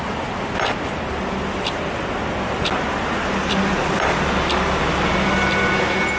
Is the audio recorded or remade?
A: recorded